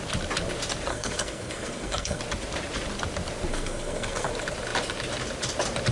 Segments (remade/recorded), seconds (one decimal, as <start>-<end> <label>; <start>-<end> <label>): 0.0-0.9 recorded; 0.9-2.2 remade; 2.2-3.5 recorded; 3.5-4.3 remade; 4.3-5.9 recorded